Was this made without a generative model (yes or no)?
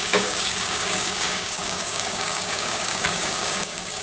no